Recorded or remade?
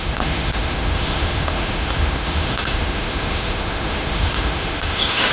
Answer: remade